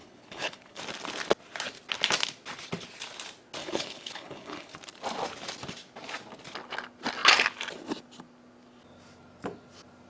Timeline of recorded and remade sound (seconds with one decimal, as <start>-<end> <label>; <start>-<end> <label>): 0.0-0.8 remade; 0.8-3.6 recorded; 3.6-4.7 remade; 4.7-10.1 recorded